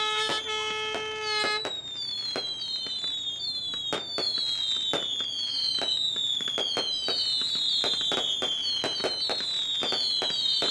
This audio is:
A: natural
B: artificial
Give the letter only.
A